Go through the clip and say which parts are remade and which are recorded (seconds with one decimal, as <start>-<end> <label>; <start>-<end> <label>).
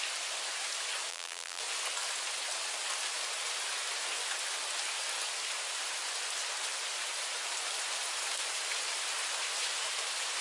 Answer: 0.0-1.1 recorded; 1.1-1.6 remade; 1.6-10.4 recorded